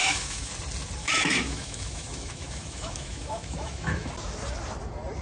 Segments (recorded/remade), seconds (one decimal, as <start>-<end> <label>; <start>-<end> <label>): 0.0-0.5 remade; 0.5-1.0 recorded; 1.0-4.1 remade; 4.1-5.2 recorded

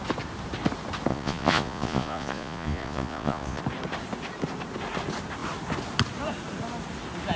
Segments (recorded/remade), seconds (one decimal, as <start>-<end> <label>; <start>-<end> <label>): 0.0-1.1 recorded; 1.1-3.6 remade; 3.6-7.4 recorded

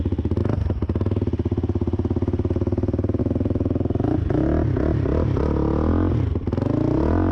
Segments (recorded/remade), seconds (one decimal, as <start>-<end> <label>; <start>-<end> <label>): 0.0-7.3 recorded

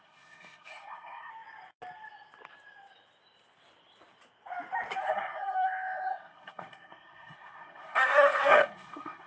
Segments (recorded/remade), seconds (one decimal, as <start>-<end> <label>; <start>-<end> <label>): 0.0-1.3 remade; 1.3-5.0 recorded; 5.0-9.3 remade

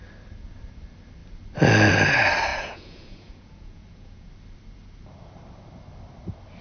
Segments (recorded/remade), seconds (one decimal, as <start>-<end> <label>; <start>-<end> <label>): 0.0-2.5 recorded; 2.5-4.3 remade; 4.3-6.6 recorded

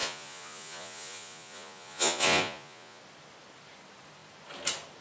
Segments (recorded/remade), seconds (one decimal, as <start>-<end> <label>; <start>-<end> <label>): 0.0-3.0 remade; 3.0-5.0 recorded

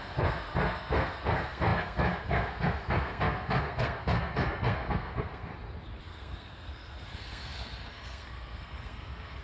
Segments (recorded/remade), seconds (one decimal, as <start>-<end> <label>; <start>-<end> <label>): 0.0-5.5 remade; 5.5-6.0 recorded; 6.0-9.4 remade

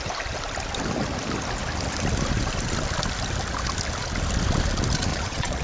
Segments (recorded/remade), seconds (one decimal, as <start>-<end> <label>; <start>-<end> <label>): 0.0-5.1 recorded; 5.1-5.6 remade